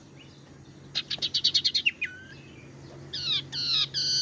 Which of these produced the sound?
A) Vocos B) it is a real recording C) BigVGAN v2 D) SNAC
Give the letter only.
B